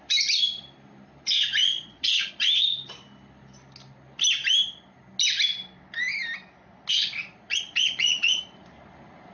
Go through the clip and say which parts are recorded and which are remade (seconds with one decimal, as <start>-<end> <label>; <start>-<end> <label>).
0.0-1.6 recorded; 1.6-2.3 remade; 2.3-7.2 recorded; 7.2-8.4 remade; 8.4-9.3 recorded